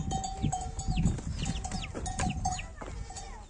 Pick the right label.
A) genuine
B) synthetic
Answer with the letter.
A